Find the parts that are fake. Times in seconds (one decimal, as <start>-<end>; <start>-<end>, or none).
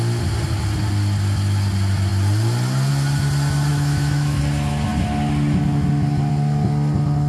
3.7-4.4